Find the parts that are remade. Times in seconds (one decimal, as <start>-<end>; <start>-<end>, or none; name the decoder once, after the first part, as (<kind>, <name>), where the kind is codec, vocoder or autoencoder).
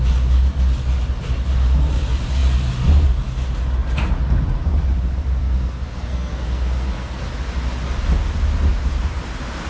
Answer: 5.4-7.2 (codec, SNAC)